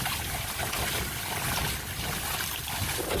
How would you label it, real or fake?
real